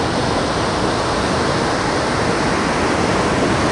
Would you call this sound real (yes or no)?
yes